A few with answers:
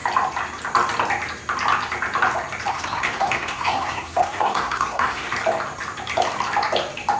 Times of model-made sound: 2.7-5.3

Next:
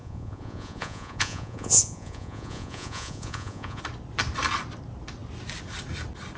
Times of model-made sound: 0.0-3.8